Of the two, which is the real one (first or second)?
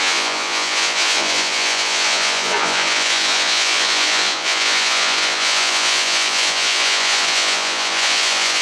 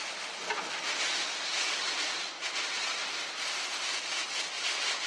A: second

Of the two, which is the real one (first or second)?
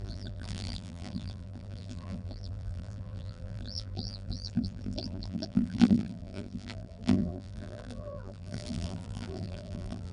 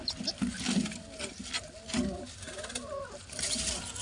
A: second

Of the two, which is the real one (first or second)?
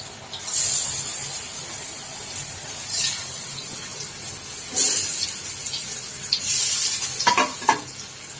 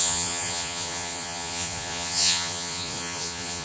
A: first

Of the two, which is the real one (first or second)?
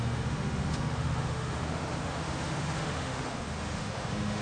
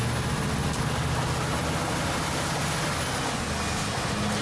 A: second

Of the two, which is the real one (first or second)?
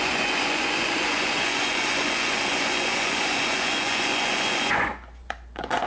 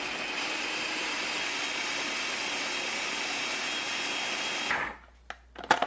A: second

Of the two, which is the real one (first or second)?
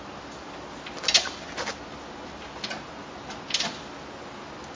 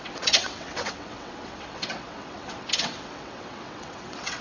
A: first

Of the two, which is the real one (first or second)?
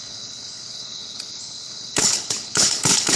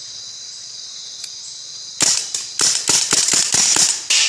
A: second